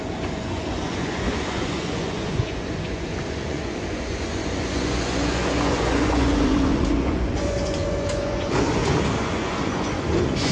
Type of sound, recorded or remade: remade